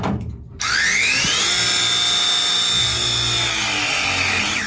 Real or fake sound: real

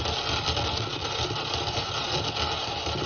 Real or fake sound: real